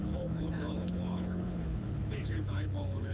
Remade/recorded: remade